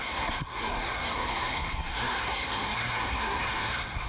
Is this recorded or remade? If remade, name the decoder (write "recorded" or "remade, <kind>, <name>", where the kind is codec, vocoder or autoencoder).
remade, codec, SNAC